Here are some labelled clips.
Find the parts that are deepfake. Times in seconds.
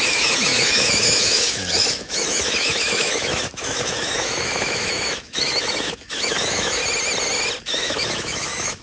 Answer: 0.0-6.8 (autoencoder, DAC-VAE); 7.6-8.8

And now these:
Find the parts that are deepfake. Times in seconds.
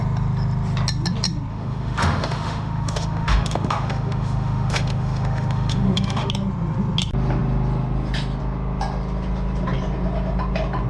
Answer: 1.5-6.3 (autoencoder, DAC-VAE)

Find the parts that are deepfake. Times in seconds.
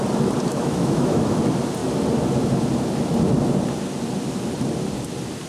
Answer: 0.5-1.4 (autoencoder, DAC-VAE)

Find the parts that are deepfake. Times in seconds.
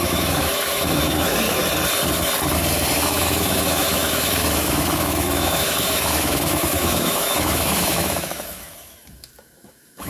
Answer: 0.0-1.6 (autoencoder, DAC-VAE); 2.9-10.1